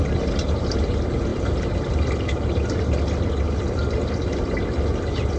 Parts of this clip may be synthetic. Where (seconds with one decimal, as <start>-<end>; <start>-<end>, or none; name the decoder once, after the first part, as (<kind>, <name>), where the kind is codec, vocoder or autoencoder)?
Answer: 1.3-1.9 (vocoder, BigVGAN v2)